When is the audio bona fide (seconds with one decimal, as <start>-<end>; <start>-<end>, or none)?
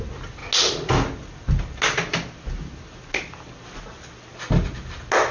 0.0-5.3